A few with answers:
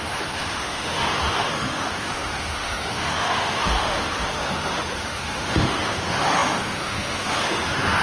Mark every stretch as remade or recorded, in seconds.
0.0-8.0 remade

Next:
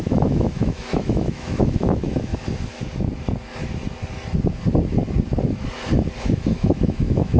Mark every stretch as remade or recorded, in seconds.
0.0-2.3 remade; 2.3-6.2 recorded; 6.2-7.4 remade